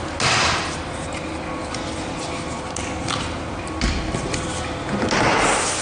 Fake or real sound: real